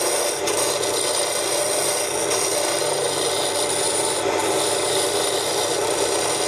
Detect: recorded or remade recorded